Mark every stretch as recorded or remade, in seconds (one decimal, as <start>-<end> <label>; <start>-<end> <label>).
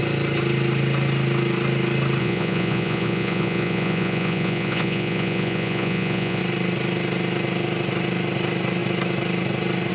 0.0-2.2 recorded; 2.2-6.4 remade; 6.4-9.9 recorded